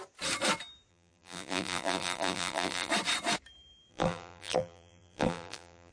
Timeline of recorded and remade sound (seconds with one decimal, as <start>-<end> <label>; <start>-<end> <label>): 0.0-0.9 recorded; 0.9-2.9 remade; 2.9-3.9 recorded; 3.9-5.9 remade